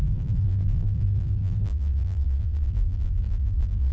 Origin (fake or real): fake